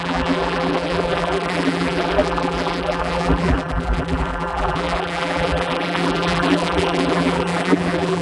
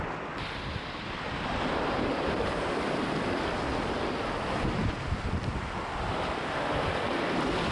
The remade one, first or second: first